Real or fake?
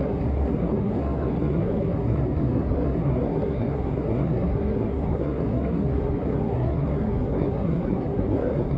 fake